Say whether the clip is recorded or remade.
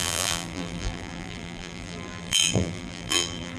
remade